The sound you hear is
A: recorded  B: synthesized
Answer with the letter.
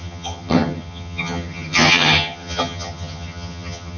B